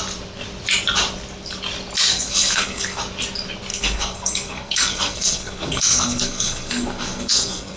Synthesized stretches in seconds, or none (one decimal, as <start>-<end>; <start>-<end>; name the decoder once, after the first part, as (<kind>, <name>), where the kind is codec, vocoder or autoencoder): 2.1-3.0 (codec, SNAC); 3.7-7.8